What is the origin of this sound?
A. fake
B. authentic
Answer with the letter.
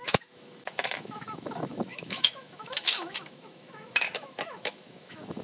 A